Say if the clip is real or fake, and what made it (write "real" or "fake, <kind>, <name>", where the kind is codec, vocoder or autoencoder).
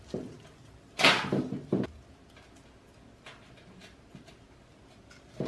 real